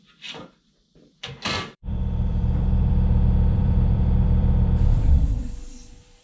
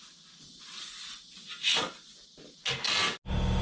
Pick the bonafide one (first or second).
second